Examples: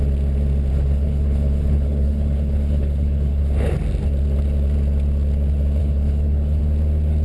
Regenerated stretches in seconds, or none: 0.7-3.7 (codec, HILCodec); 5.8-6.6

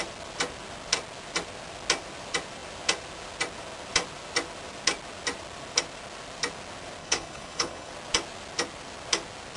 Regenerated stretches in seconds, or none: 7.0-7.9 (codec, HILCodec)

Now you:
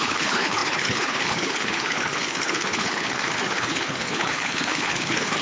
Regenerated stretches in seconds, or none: 0.0-5.4 (codec, HILCodec)